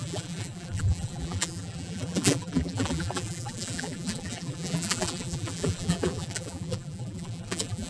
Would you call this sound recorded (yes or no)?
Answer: no